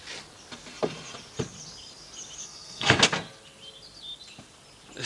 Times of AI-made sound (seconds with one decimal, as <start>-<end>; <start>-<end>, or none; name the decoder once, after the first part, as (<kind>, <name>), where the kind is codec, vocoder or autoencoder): 2.4-3.0 (codec, SNAC)